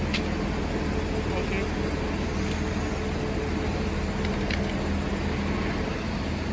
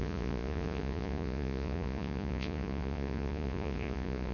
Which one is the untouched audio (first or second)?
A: first